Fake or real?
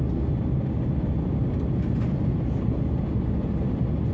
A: real